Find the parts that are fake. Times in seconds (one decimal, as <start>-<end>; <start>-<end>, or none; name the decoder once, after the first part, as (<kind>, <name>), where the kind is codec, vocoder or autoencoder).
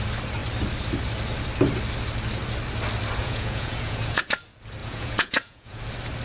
3.2-4.2 (vocoder, Vocos); 4.8-5.8